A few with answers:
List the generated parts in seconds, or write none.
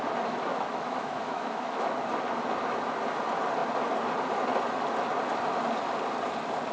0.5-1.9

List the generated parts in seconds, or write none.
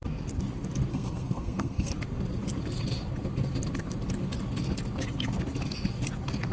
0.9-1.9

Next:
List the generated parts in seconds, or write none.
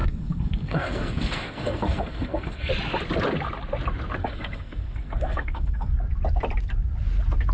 0.0-2.7; 4.2-5.9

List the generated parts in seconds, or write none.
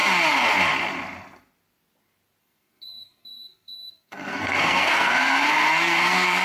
2.4-6.4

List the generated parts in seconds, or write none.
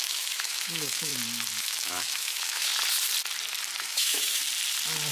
0.0-1.1; 1.6-2.7; 3.8-4.4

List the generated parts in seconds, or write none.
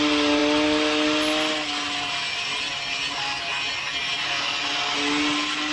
none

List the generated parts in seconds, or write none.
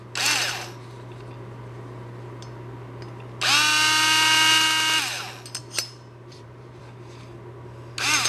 5.6-6.8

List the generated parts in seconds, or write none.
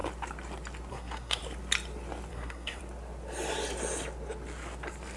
0.9-1.4; 2.3-2.8